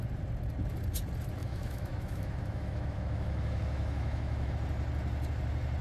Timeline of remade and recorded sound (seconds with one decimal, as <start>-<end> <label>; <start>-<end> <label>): 0.0-1.4 recorded; 1.4-4.5 remade; 4.5-5.8 recorded